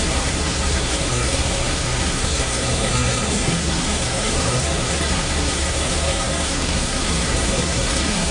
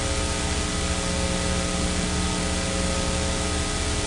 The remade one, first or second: first